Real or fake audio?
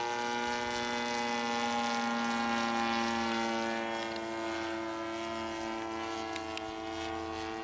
real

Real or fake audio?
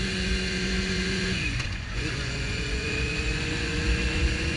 fake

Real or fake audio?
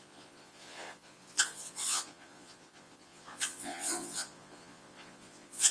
fake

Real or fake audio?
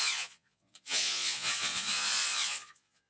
fake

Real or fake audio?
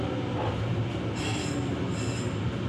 real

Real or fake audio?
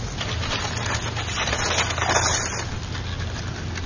real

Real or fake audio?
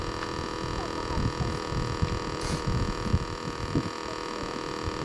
fake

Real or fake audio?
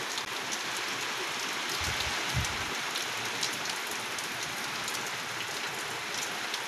real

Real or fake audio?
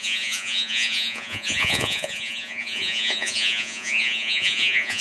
fake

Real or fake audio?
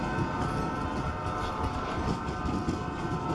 real